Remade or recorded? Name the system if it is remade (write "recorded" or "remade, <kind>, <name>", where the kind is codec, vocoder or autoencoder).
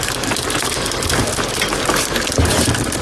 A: recorded